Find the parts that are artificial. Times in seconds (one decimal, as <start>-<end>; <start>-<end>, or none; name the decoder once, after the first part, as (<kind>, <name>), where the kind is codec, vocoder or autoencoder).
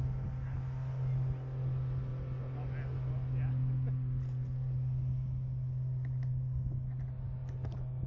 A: none